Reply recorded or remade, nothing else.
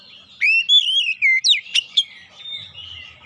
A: recorded